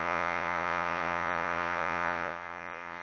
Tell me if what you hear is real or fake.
fake